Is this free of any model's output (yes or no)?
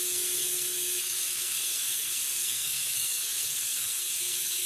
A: no